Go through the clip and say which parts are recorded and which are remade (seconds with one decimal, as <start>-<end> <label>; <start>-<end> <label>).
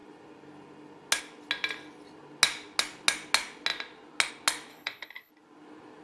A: 0.0-4.7 recorded; 4.7-5.3 remade; 5.3-6.0 recorded